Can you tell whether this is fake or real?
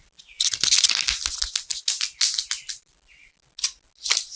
real